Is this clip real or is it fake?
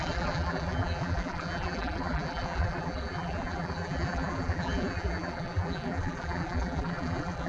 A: fake